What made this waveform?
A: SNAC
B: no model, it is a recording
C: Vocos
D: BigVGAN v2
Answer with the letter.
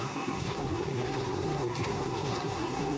A